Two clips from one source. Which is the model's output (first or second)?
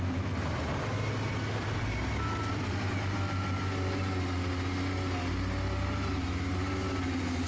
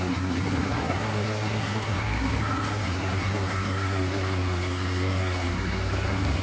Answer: second